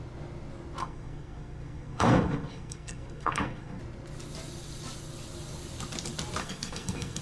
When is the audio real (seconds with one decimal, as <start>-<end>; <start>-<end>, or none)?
0.0-0.8; 3.8-6.4